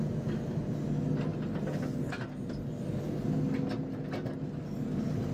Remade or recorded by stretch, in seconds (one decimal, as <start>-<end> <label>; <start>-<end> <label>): 0.0-5.3 recorded